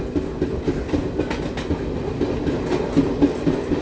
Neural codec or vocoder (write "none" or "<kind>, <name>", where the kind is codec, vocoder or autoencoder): none